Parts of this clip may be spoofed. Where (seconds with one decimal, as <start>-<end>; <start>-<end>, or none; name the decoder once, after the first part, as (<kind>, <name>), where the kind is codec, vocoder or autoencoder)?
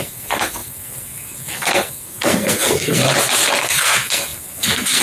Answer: 0.0-3.0 (codec, SNAC); 3.6-5.0